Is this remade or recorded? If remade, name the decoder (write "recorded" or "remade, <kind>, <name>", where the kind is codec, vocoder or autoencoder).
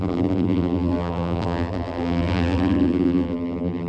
remade, vocoder, BigVGAN v2